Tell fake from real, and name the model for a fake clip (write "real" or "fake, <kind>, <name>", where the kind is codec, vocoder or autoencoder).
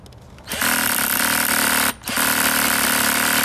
real